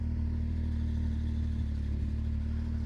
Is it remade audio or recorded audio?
recorded